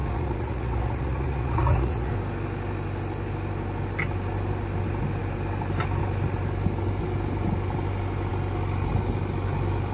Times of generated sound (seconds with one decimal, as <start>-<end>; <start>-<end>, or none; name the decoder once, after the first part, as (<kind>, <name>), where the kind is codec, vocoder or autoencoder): 0.0-2.1 (vocoder, Vocos)